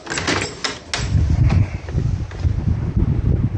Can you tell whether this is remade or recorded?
recorded